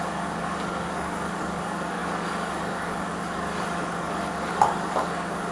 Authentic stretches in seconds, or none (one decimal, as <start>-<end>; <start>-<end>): none